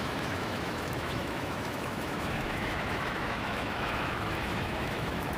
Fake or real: fake